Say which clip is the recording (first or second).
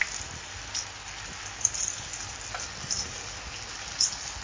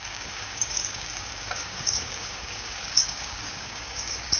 first